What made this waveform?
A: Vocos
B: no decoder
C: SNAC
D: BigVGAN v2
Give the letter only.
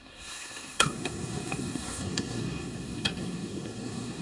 C